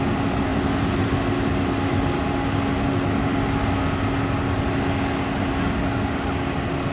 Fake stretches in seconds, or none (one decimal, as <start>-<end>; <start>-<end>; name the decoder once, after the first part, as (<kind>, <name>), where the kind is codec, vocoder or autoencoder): none